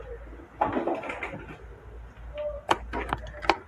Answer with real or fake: real